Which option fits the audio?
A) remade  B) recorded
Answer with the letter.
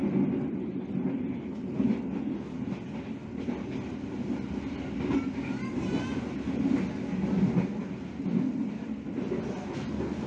B